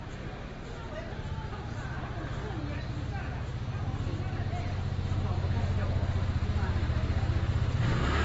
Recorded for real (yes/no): yes